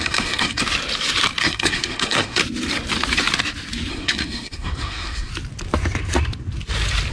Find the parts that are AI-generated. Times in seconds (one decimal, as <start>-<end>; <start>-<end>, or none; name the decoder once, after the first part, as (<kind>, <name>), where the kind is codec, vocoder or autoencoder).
0.0-0.6 (codec, SNAC); 1.4-2.4; 3.9-5.3